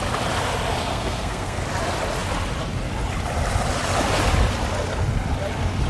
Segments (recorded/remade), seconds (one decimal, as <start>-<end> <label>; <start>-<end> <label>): 0.0-0.9 recorded; 0.9-1.6 remade; 1.6-5.9 recorded